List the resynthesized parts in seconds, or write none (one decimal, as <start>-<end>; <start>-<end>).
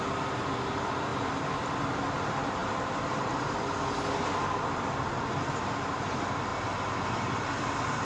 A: none